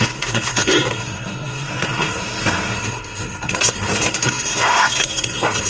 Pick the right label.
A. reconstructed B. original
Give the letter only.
A